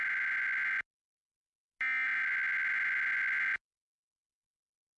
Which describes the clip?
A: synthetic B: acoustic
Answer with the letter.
B